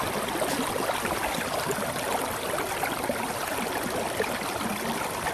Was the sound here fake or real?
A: real